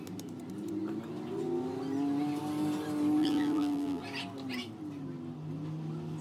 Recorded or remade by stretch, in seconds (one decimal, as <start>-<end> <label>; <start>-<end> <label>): 0.0-3.2 recorded; 3.2-4.0 remade; 4.0-6.2 recorded